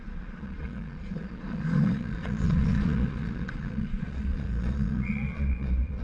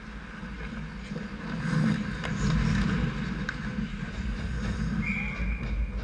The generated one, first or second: first